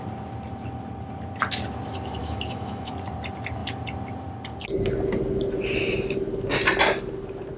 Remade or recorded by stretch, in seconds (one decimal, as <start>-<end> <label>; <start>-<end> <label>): 0.0-2.2 recorded; 2.2-2.9 remade; 2.9-7.6 recorded